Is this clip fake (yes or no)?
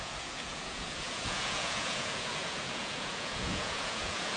yes